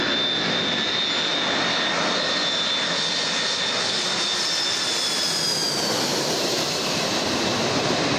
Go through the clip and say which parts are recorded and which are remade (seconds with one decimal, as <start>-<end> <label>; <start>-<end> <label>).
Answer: 0.0-8.2 recorded